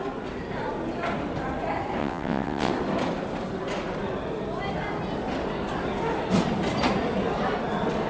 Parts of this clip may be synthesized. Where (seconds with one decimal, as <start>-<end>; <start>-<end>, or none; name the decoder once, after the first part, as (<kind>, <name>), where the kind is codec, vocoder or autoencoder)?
2.0-2.7 (vocoder, WaveNeXt)